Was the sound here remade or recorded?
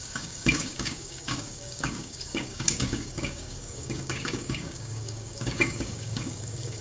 remade